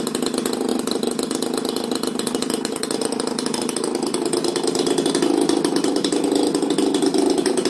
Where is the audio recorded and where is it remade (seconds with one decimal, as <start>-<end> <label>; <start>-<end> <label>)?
0.0-0.7 recorded; 0.7-5.1 remade; 5.1-7.7 recorded